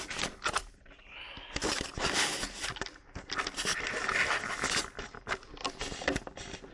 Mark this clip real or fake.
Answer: real